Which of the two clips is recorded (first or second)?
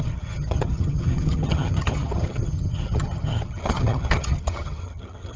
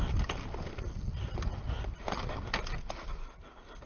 second